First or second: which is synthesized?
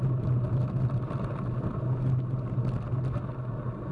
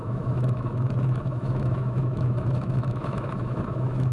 second